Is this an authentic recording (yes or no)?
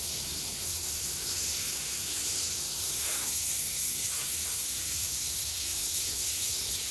no